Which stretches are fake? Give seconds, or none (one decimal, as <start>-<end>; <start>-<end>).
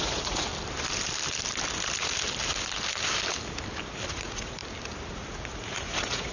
0.0-0.5; 4.1-4.6; 5.1-6.3